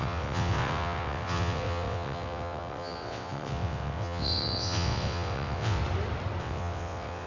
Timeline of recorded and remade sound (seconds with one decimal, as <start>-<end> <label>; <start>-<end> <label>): 0.0-5.8 remade; 5.8-6.4 recorded; 6.4-7.3 remade